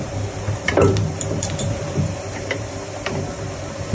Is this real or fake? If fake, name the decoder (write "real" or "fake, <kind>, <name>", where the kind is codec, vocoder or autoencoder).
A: fake, vocoder, BigVGAN v2